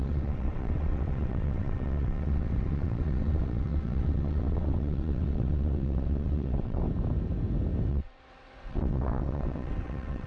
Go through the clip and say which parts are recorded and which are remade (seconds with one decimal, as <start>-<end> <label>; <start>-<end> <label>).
0.0-6.8 remade; 6.8-7.9 recorded; 7.9-10.3 remade